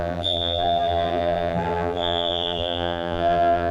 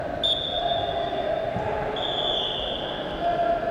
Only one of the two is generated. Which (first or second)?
first